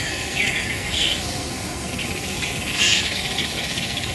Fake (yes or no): yes